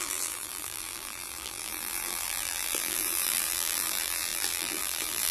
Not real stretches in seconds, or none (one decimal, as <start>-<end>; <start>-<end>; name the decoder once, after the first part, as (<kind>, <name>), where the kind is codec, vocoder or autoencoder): 0.0-5.3 (vocoder, BigVGAN v2)